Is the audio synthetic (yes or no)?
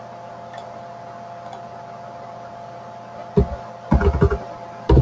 no